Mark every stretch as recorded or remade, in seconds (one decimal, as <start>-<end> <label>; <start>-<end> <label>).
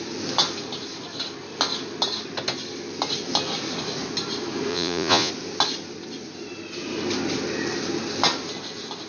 0.0-4.7 recorded; 4.7-5.3 remade; 5.3-9.1 recorded